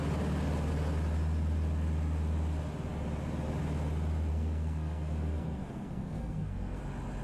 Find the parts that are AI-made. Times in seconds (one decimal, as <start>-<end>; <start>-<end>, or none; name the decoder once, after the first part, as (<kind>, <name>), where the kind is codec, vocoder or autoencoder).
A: 4.3-6.8 (codec, SNAC)